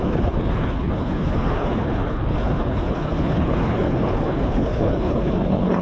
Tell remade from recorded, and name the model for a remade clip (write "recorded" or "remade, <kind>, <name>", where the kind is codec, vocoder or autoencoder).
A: remade, codec, HILCodec